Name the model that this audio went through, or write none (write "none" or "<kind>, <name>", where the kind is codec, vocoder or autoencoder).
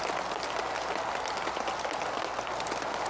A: none